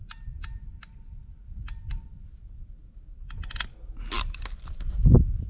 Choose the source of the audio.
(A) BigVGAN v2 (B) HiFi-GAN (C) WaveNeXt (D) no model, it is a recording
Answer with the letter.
D